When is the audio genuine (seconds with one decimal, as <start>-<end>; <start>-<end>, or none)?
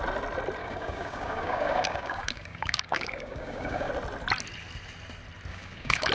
0.0-0.6; 3.9-5.5